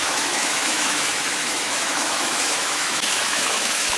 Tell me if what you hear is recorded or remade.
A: remade